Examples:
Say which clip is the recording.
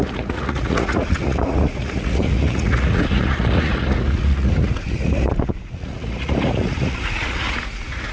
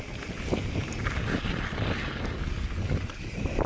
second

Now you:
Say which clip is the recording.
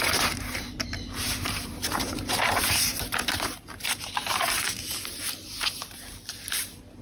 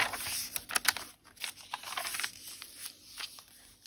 second